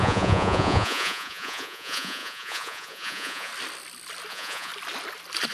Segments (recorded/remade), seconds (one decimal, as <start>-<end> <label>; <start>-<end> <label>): 0.0-3.5 remade; 3.5-4.3 recorded; 4.3-4.7 remade; 4.7-5.5 recorded

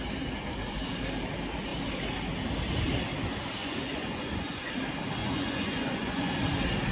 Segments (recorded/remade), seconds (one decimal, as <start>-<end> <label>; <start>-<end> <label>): 0.0-3.6 recorded; 3.6-4.7 remade; 4.7-5.2 recorded; 5.2-6.3 remade; 6.3-6.9 recorded

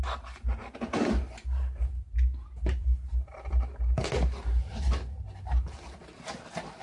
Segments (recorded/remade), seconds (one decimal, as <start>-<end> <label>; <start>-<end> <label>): 0.0-6.8 recorded

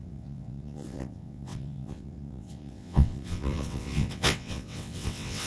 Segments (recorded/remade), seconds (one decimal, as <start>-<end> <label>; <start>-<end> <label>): 0.0-5.5 remade

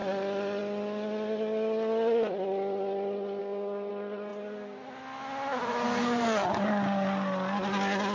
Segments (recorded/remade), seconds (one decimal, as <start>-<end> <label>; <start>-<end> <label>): 0.0-3.4 recorded; 3.4-3.9 remade; 3.9-8.1 recorded